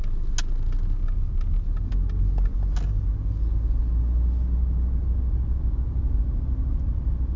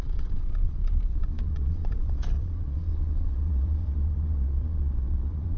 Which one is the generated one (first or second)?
second